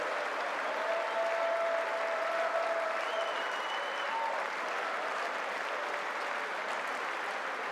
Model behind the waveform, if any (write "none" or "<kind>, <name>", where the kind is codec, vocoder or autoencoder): none